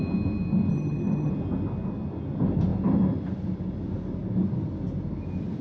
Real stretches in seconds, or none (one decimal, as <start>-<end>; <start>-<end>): 0.0-0.7; 1.3-5.6